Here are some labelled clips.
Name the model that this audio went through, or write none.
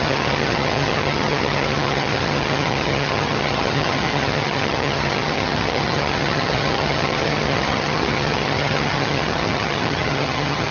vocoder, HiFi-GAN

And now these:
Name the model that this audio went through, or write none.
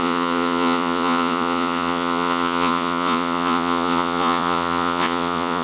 vocoder, Vocos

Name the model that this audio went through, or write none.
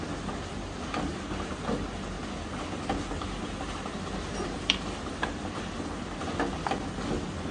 none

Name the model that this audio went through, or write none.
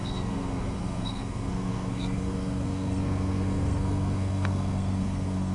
codec, SNAC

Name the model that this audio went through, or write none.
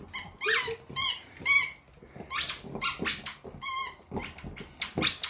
none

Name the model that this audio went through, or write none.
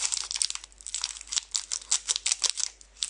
none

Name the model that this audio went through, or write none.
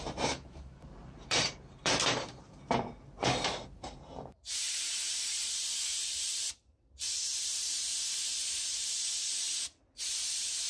vocoder, BigVGAN v2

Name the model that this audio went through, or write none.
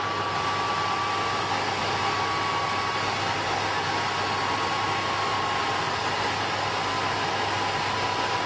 none